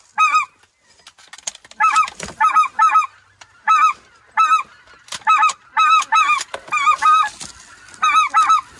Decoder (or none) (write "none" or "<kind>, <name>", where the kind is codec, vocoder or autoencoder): none